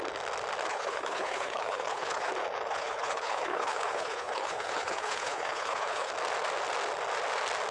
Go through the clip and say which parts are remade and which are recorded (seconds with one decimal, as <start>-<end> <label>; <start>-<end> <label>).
0.0-0.7 recorded; 0.7-2.3 remade; 2.3-2.7 recorded; 2.7-6.1 remade; 6.1-7.7 recorded